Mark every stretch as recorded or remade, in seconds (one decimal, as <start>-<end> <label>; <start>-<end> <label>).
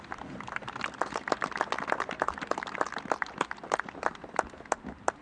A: 0.0-5.2 recorded